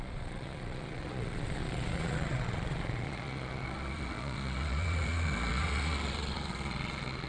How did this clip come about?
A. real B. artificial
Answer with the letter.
B